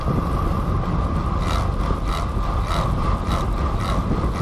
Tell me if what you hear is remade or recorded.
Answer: recorded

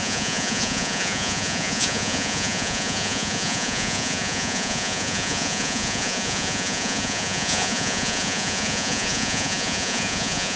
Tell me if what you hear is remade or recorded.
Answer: remade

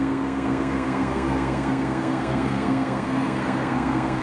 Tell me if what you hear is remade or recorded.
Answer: remade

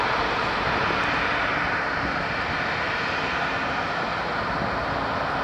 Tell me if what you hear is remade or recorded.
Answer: recorded